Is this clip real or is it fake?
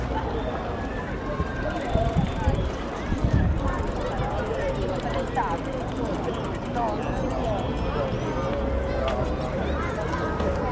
real